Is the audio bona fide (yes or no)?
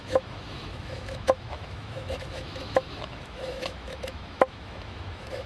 no